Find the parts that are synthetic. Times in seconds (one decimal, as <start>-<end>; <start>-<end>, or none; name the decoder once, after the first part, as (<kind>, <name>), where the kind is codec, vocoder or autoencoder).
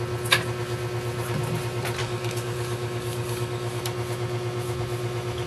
2.0-3.8 (codec, DAC)